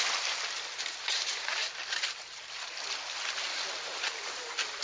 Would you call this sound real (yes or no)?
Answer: yes